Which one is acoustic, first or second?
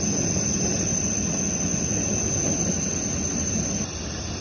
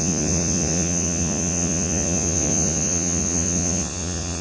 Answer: first